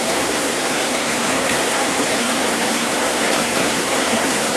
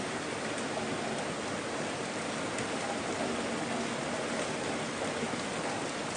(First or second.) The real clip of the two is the second